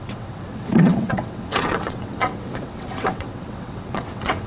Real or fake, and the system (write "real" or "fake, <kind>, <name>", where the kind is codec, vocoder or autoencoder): fake, vocoder, WaveNeXt